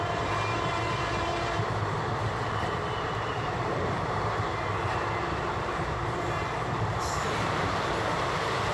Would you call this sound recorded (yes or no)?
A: no